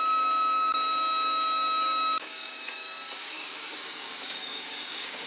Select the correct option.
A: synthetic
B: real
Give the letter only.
A